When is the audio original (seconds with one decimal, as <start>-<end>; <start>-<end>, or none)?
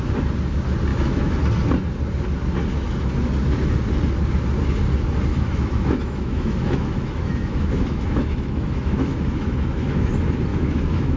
0.0-0.9; 1.4-5.3; 10.1-10.5